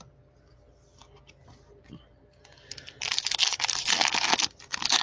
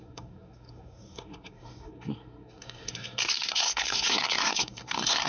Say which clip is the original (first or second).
first